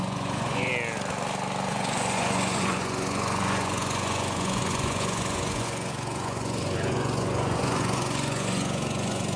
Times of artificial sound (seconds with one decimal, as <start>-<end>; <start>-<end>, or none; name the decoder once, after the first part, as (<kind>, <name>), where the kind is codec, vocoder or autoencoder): 0.0-0.7 (vocoder, Vocos); 1.7-9.4